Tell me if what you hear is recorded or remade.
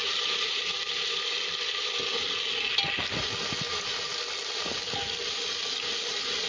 recorded